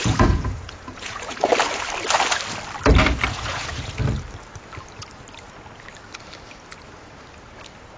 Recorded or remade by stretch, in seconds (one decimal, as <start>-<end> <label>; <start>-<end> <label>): 0.0-1.5 remade; 1.5-3.3 recorded; 3.3-4.0 remade; 4.0-8.0 recorded